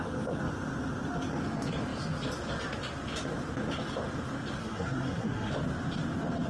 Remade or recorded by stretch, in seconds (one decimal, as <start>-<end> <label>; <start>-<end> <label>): 0.0-4.6 recorded; 4.6-5.5 remade; 5.5-6.5 recorded